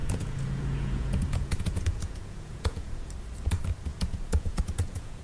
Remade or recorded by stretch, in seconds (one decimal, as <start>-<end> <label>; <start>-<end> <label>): 0.0-3.1 remade; 3.1-3.9 recorded; 3.9-5.2 remade